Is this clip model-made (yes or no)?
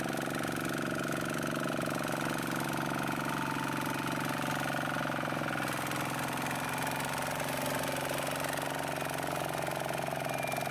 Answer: no